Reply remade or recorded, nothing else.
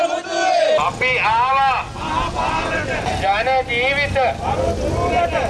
recorded